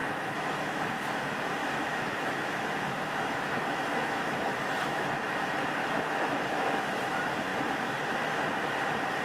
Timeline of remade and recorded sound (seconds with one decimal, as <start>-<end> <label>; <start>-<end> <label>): 0.0-0.8 remade; 0.8-1.6 recorded; 1.6-5.1 remade; 5.1-5.8 recorded; 5.8-7.0 remade; 7.0-9.2 recorded